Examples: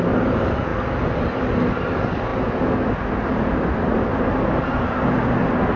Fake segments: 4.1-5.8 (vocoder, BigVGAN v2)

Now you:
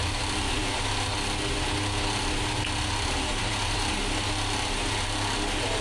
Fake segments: 0.0-0.8 (vocoder, BigVGAN v2); 3.3-3.8

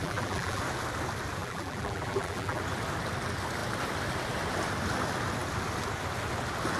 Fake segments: 0.0-0.6 (vocoder, BigVGAN v2); 1.4-2.6

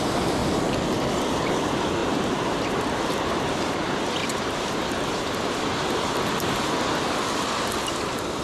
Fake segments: 0.4-1.2 (vocoder, BigVGAN v2); 2.0-2.8; 4.2-5.6

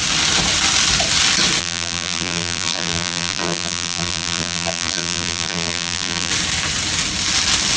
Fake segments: 1.6-6.3 (vocoder, BigVGAN v2)